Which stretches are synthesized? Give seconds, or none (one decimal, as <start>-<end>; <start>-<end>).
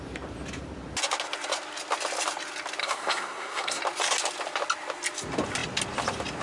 2.8-3.8